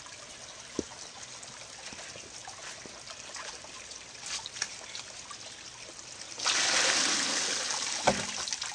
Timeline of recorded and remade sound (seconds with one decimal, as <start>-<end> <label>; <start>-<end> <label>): 0.0-8.7 recorded

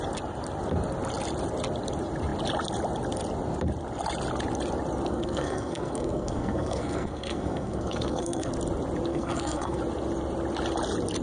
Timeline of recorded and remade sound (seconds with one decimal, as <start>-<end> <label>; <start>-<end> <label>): 0.0-5.1 recorded; 5.1-8.5 remade; 8.5-9.1 recorded; 9.1-9.8 remade; 9.8-11.2 recorded

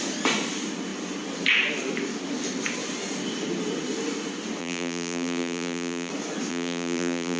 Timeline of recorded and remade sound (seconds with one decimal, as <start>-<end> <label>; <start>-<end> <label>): 0.0-4.6 recorded; 4.6-6.1 remade; 6.1-6.5 recorded; 6.5-7.4 remade

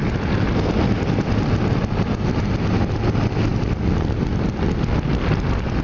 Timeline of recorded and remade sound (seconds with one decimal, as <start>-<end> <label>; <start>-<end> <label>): 0.0-5.8 recorded

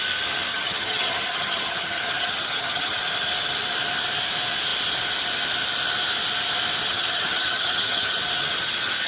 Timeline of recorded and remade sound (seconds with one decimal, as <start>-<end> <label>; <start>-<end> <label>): 0.0-0.5 recorded; 0.5-3.0 remade; 3.0-6.9 recorded; 6.9-8.2 remade; 8.2-9.1 recorded

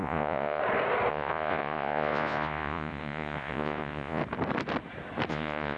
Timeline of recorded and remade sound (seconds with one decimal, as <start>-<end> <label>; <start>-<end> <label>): 0.0-0.6 remade; 0.6-1.1 recorded; 1.1-4.2 remade; 4.2-5.3 recorded; 5.3-5.8 remade

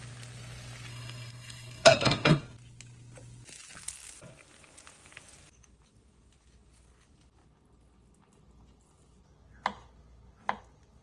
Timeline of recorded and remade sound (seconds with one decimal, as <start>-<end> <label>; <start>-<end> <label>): 0.0-0.9 recorded; 0.9-2.4 remade; 2.4-11.0 recorded